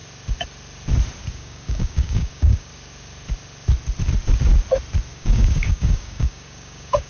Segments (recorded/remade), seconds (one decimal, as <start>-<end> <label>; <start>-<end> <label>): 0.0-1.3 recorded; 1.3-2.7 remade; 2.7-5.1 recorded; 5.1-7.1 remade